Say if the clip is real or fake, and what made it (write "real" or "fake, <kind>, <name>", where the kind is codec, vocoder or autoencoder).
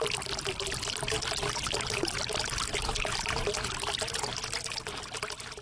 real